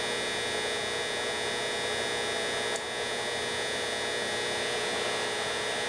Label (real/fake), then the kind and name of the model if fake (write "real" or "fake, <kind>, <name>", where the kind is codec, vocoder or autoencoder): real